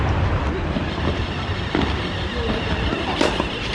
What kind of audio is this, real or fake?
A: real